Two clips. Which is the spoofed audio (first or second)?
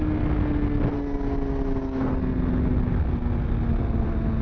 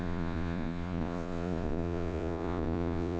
second